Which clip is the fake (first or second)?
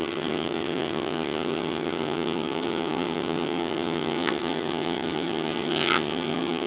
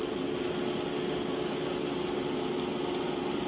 first